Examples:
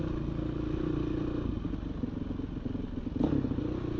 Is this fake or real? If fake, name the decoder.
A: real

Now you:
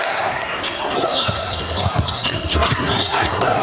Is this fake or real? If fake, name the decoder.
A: fake, codec, SNAC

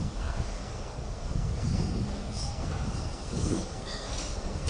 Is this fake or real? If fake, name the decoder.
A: fake, codec, SNAC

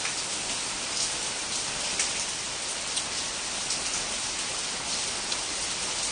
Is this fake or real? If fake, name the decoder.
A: real